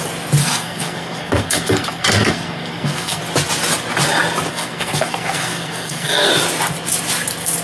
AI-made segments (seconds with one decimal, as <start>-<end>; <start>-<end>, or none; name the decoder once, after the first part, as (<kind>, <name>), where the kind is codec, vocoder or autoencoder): 0.4-3.2 (codec, SNAC); 4.5-6.3